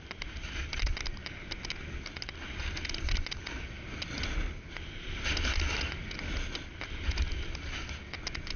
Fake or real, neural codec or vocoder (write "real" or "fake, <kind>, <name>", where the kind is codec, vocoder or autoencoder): real